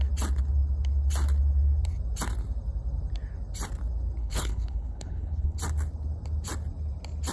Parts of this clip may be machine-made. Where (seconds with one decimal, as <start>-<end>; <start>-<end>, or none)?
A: 4.2-5.6